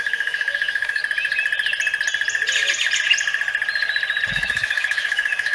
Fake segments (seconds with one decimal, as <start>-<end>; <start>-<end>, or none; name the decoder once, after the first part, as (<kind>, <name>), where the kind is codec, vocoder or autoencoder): 0.0-1.0 (autoencoder, DAC-VAE); 4.3-5.5